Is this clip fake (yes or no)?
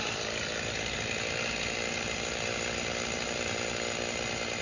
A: no